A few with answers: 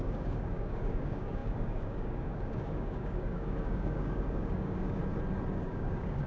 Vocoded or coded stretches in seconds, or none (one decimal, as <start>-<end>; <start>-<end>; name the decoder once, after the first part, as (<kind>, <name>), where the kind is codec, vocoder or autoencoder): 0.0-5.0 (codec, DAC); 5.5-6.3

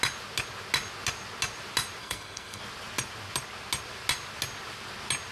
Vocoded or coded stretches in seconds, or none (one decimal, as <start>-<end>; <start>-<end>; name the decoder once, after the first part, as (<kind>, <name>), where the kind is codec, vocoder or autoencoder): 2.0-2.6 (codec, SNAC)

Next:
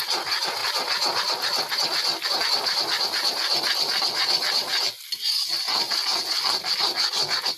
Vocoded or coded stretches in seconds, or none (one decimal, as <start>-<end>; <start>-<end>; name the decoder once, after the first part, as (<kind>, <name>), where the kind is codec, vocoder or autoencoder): none

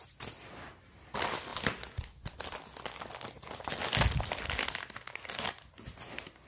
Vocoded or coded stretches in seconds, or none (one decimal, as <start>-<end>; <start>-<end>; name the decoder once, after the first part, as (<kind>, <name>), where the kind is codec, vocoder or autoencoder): none

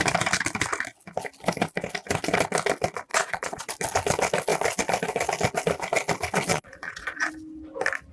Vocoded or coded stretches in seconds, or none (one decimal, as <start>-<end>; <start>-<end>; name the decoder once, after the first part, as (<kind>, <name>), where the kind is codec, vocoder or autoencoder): 3.1-3.7 (vocoder, Vocos); 6.5-7.3

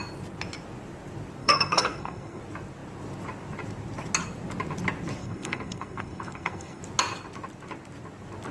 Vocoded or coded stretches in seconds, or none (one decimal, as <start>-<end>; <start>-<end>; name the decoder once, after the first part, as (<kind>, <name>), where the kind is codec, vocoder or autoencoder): 1.4-2.4 (codec, SNAC); 5.2-6.8